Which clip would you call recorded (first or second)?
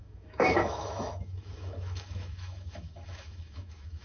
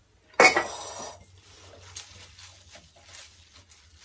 second